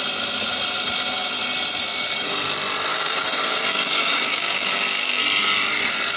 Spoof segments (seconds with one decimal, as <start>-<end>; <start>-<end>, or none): 2.9-5.2